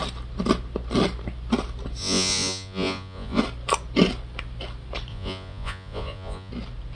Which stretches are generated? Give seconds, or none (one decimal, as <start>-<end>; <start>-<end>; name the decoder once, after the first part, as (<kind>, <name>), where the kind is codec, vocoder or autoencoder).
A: 2.0-3.4 (vocoder, Vocos); 5.1-6.5